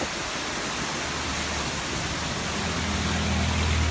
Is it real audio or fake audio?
real